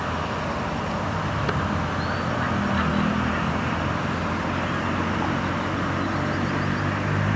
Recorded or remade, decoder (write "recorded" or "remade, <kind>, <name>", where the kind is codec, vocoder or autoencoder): recorded